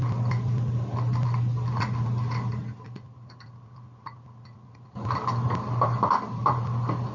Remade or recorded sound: recorded